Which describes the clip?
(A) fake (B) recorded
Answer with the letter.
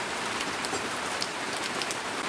A